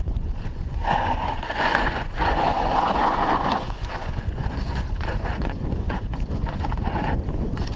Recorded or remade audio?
remade